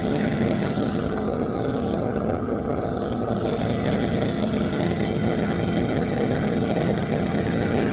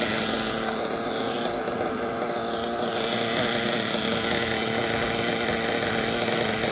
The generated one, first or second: first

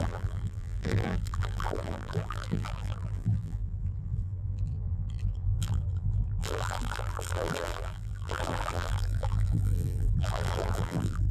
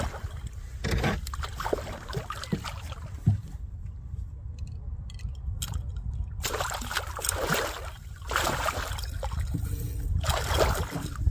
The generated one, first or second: first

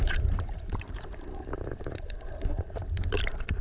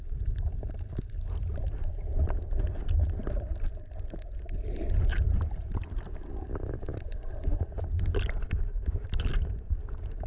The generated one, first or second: first